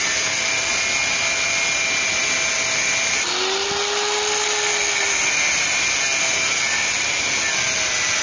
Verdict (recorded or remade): recorded